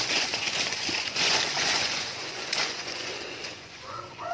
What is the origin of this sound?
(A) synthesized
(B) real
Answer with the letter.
A